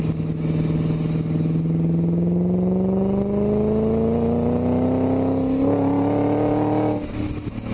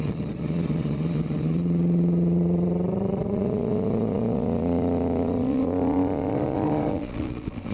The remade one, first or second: second